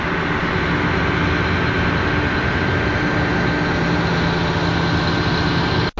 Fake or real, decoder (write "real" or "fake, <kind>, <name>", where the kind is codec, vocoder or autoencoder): real